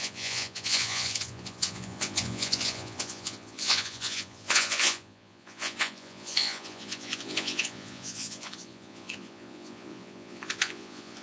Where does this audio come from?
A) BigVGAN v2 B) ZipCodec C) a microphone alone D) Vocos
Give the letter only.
D